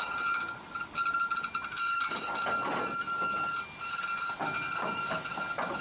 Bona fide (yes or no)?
yes